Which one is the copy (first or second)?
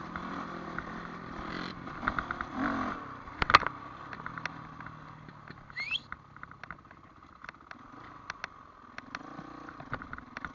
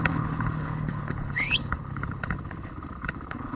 second